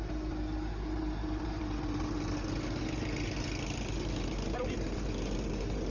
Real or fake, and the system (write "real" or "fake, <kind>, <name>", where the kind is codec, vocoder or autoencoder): real